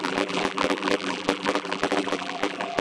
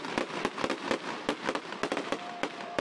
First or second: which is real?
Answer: second